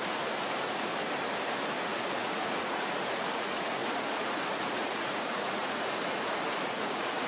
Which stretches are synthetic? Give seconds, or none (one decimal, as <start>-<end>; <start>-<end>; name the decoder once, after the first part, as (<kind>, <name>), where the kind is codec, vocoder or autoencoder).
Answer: 0.0-0.9 (vocoder, Vocos); 1.9-7.3